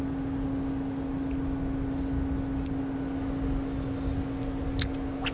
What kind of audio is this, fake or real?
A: real